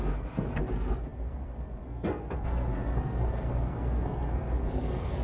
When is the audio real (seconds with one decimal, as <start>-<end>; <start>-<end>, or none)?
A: none